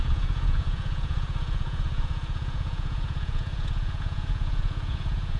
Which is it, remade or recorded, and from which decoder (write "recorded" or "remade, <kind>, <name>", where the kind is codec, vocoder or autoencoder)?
remade, vocoder, Vocos